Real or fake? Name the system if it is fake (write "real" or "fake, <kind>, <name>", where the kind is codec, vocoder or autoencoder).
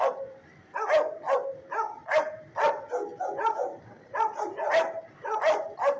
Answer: real